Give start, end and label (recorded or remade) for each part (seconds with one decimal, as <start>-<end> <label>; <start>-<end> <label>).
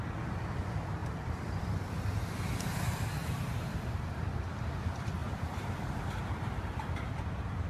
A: 0.0-1.0 recorded; 1.0-1.6 remade; 1.6-3.2 recorded; 3.2-4.2 remade; 4.2-5.2 recorded; 5.2-6.2 remade; 6.2-7.7 recorded